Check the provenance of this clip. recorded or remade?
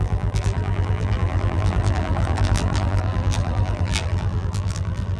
remade